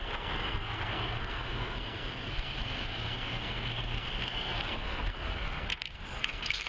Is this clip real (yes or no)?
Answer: no